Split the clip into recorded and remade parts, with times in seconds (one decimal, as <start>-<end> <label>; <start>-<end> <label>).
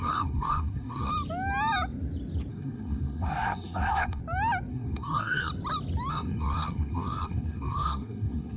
0.0-1.1 remade; 1.1-2.5 recorded; 2.5-4.2 remade; 4.2-4.7 recorded; 4.7-5.5 remade; 5.5-6.1 recorded; 6.1-8.6 remade